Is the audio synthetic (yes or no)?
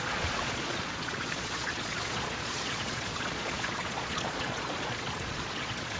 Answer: yes